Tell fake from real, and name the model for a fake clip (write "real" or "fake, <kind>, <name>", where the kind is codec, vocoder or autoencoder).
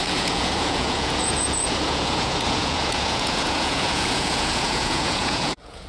fake, vocoder, Vocos